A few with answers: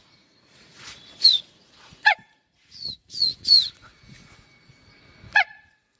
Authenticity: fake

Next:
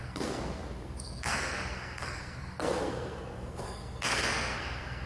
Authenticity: fake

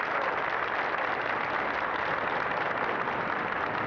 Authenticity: real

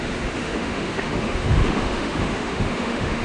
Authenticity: fake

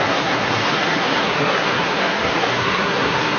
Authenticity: fake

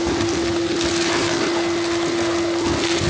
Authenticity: real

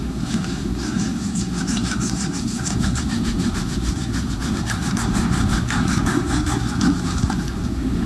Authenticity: fake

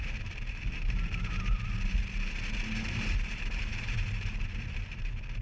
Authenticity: fake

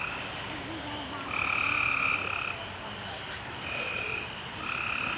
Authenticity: real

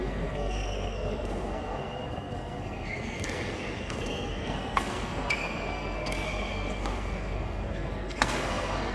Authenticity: fake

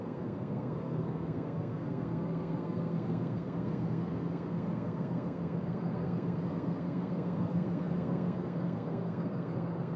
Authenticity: fake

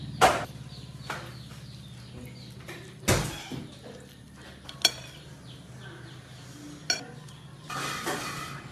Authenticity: real